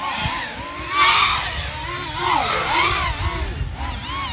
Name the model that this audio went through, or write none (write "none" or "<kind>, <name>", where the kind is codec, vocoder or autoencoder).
none